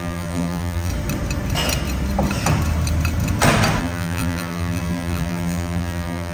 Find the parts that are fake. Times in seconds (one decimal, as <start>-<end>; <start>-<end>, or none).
0.0-0.9; 3.8-6.3